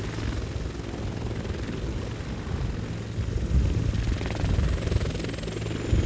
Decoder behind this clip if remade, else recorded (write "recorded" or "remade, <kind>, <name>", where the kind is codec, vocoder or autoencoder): recorded